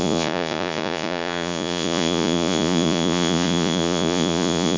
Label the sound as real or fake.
fake